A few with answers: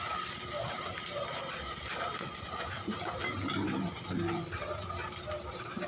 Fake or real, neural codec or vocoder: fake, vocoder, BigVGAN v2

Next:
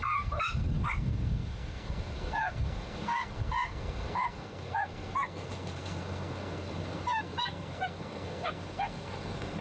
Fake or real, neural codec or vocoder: fake, codec, SNAC